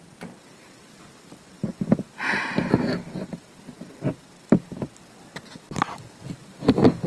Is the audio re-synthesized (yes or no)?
no